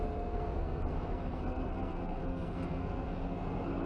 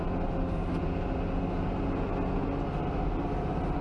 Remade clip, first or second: first